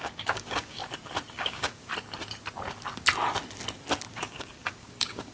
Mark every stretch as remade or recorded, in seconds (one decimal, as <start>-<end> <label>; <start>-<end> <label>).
0.0-0.8 remade; 0.8-1.3 recorded; 1.3-1.9 remade; 1.9-4.1 recorded; 4.1-5.3 remade